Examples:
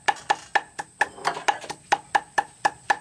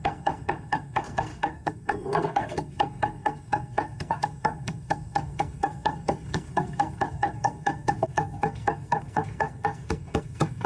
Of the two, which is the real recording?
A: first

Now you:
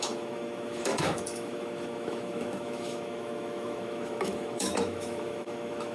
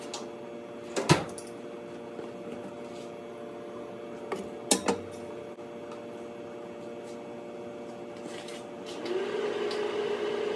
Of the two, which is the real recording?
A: second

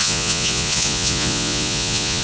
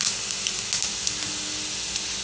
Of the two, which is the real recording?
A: second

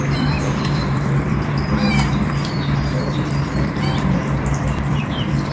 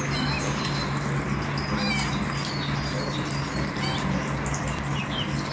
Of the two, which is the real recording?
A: second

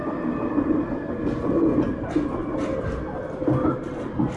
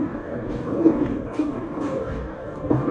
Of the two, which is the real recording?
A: first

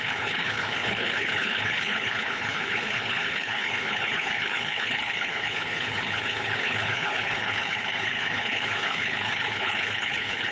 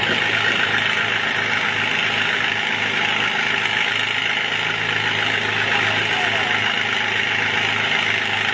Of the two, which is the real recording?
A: second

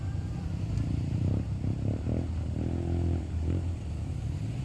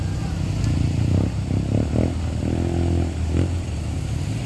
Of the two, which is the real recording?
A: second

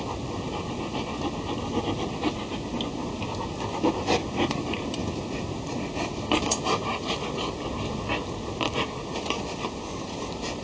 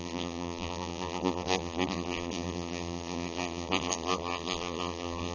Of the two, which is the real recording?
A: first